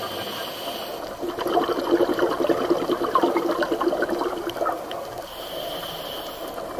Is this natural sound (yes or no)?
yes